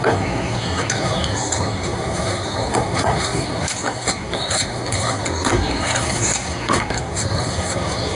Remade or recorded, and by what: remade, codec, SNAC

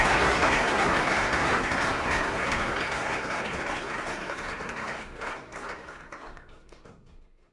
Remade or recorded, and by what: remade, codec, SNAC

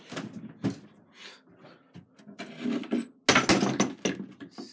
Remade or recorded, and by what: recorded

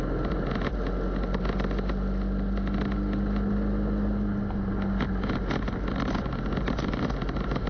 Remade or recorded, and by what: recorded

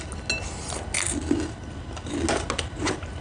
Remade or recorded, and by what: recorded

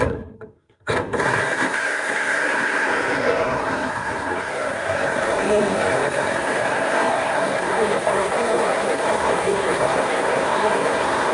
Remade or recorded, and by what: remade, codec, SNAC